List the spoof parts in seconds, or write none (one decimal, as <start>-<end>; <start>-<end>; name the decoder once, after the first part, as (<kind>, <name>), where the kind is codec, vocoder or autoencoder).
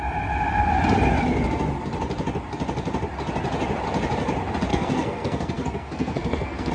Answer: 4.7-6.7 (codec, SNAC)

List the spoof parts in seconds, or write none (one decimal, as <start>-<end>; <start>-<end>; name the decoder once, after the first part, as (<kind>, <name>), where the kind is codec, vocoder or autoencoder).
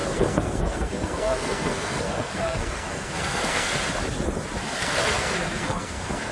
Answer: 0.0-3.8 (codec, SNAC); 4.6-6.3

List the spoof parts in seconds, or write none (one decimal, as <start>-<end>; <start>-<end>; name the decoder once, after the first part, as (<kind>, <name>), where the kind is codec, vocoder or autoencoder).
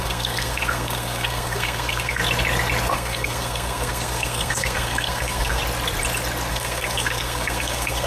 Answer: 0.0-2.2 (codec, SNAC); 2.9-5.6; 6.5-8.1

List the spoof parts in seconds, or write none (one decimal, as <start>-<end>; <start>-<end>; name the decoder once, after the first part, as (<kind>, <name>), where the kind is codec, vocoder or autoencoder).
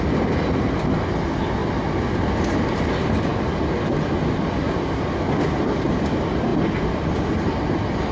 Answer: none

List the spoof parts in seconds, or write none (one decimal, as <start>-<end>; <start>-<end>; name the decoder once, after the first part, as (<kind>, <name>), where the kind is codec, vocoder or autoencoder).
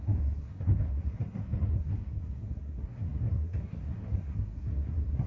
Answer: 0.0-5.3 (codec, SNAC)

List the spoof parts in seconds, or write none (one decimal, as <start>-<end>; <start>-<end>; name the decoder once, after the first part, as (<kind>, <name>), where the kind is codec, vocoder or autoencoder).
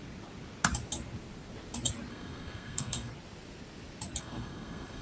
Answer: 2.1-3.1 (codec, SNAC); 4.2-5.0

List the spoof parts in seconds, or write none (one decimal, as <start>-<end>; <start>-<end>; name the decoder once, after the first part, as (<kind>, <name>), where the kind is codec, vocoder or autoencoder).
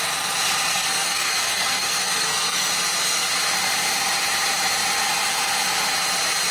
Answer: 0.7-2.7 (codec, SNAC)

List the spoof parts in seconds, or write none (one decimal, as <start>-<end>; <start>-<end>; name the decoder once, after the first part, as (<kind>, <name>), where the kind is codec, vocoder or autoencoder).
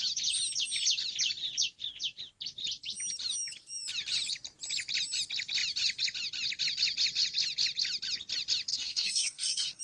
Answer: 8.7-9.8 (codec, SNAC)